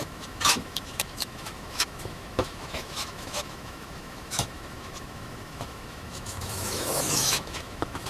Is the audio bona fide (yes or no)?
no